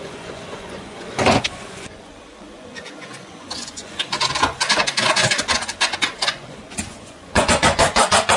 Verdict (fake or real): fake